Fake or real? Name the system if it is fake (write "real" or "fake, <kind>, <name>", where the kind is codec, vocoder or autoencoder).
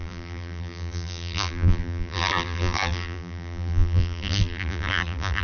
fake, vocoder, BigVGAN v2